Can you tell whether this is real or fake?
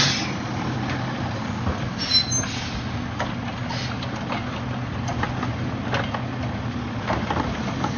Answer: real